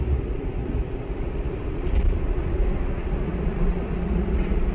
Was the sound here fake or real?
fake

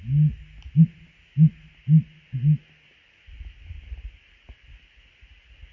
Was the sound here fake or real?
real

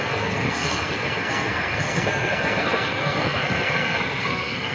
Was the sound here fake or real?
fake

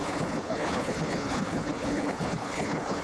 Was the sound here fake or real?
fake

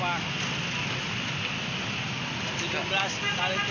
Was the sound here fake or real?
real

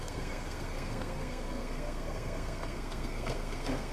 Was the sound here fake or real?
fake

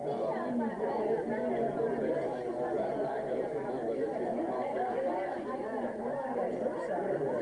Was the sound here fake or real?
real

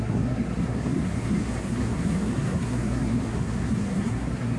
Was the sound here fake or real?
fake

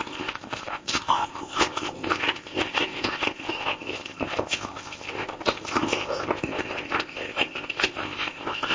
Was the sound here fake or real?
fake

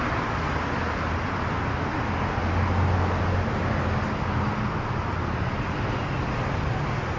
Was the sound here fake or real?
real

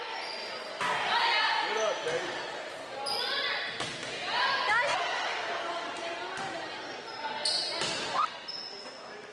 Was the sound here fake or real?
real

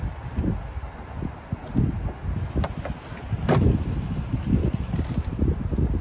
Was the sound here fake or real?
real